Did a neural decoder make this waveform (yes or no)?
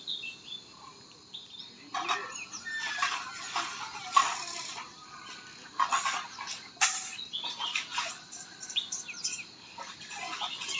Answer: no